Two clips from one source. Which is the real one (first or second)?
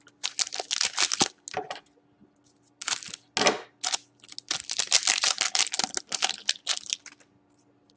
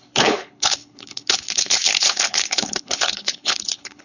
first